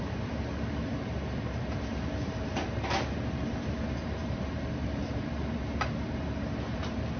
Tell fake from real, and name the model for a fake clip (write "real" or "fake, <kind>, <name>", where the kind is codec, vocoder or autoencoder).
fake, vocoder, BigVGAN v2